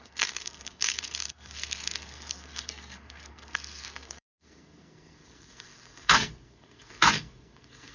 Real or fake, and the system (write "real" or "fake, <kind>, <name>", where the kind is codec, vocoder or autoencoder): fake, codec, SNAC